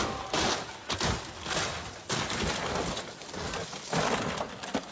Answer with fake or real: real